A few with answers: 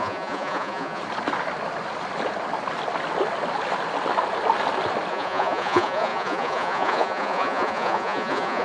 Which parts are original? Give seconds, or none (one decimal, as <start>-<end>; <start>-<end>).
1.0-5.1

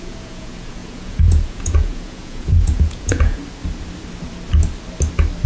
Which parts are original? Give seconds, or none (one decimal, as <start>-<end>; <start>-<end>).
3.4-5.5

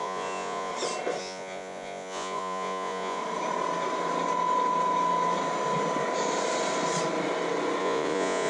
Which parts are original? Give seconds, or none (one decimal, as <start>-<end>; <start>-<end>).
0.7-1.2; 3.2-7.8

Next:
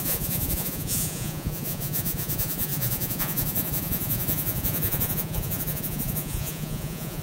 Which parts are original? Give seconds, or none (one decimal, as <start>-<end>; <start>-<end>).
none

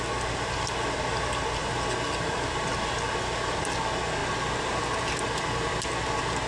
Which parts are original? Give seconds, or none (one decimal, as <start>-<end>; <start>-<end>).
0.0-6.5

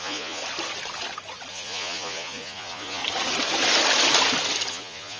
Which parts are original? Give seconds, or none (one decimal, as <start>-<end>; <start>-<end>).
0.4-1.5; 3.0-4.7